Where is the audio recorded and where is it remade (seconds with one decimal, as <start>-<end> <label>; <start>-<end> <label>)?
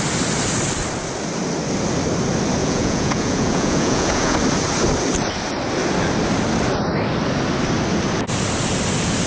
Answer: 0.0-2.6 recorded; 2.6-4.4 remade; 4.4-9.3 recorded